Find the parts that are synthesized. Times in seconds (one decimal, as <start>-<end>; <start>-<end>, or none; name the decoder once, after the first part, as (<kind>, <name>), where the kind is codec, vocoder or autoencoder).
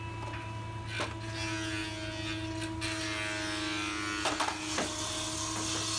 none